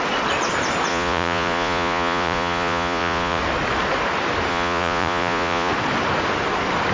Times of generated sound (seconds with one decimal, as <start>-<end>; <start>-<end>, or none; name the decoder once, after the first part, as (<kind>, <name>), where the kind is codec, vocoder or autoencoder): 0.9-3.4 (vocoder, Vocos); 4.5-5.7